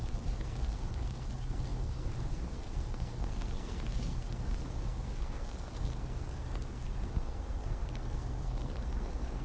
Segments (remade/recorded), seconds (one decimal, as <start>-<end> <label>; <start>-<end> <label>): 0.0-9.4 remade